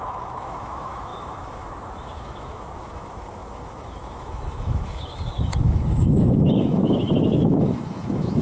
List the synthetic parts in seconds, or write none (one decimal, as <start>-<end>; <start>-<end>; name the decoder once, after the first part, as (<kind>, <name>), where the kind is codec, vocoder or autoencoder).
0.0-8.4 (autoencoder, DAC-VAE)